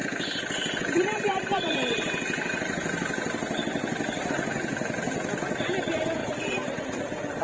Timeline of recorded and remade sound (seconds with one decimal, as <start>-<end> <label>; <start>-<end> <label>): 0.0-4.3 remade; 4.3-6.2 recorded; 6.2-7.4 remade